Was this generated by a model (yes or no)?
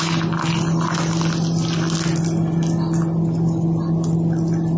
no